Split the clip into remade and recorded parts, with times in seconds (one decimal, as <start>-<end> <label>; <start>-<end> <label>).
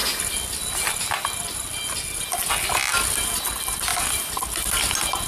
0.0-2.5 remade; 2.5-2.9 recorded; 2.9-3.5 remade; 3.5-3.9 recorded; 3.9-5.3 remade